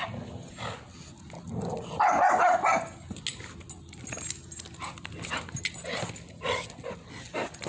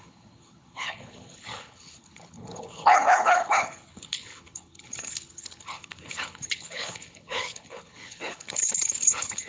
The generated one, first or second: second